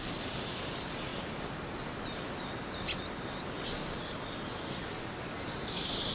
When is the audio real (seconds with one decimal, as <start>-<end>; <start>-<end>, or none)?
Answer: 0.0-6.1